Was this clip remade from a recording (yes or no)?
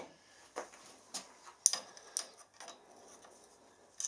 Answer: no